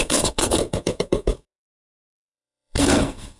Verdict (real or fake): fake